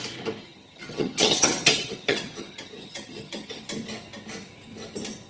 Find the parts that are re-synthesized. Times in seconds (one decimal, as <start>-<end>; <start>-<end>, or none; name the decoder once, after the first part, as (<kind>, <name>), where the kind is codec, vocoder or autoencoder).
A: 0.4-3.6 (vocoder, HiFi-GAN)